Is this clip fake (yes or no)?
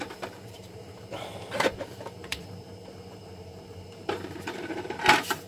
yes